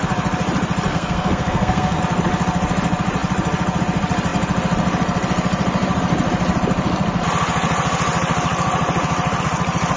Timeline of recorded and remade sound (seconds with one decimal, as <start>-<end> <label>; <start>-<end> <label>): 0.0-0.9 recorded; 0.9-2.0 remade; 2.0-10.0 recorded